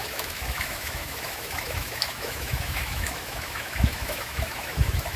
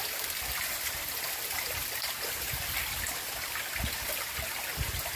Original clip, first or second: second